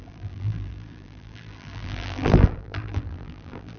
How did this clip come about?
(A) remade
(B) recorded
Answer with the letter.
A